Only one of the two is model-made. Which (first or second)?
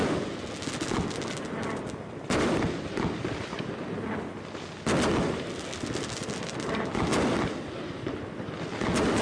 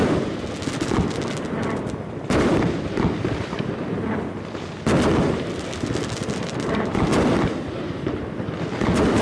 second